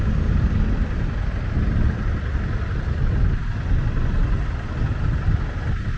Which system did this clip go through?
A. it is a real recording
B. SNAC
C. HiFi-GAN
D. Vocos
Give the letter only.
A